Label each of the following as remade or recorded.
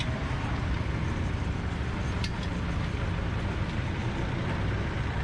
recorded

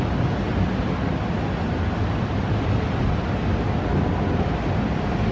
recorded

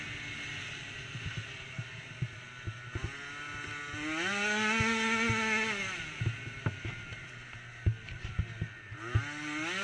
recorded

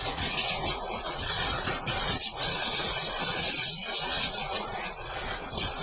remade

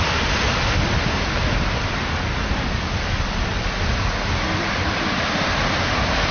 recorded